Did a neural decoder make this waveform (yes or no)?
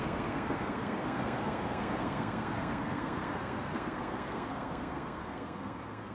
yes